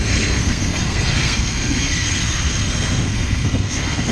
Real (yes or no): no